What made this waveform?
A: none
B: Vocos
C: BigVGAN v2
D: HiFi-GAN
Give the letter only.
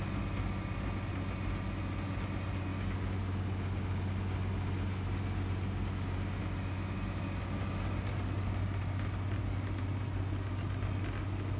A